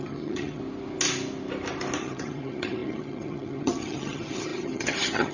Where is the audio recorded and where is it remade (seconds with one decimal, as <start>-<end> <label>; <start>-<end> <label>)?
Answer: 0.0-0.6 remade; 0.6-2.0 recorded; 2.0-5.3 remade